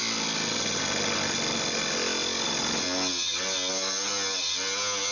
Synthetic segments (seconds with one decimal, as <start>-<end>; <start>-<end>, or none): none